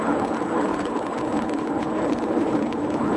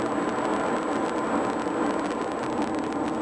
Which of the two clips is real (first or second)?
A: second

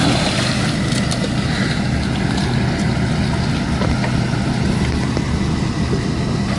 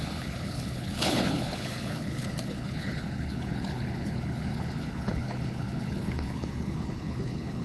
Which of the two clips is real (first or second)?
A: first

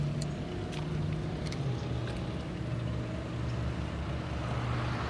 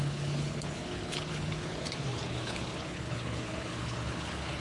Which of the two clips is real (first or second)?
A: first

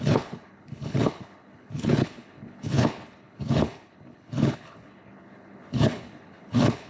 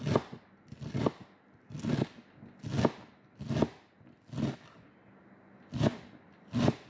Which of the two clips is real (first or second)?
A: second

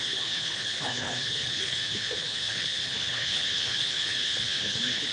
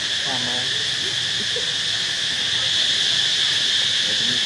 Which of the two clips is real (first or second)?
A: second